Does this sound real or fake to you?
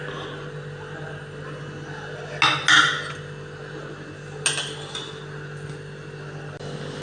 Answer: real